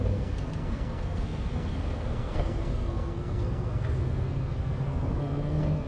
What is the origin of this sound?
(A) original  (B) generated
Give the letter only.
B